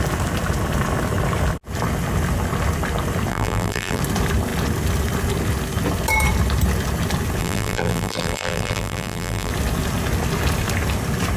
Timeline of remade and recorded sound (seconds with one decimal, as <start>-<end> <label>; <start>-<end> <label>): 0.0-3.3 recorded; 3.3-4.0 remade; 4.0-7.4 recorded; 7.4-9.5 remade; 9.5-11.4 recorded